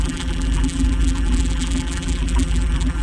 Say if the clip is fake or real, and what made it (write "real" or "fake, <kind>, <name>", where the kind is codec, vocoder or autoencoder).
fake, vocoder, BigVGAN v2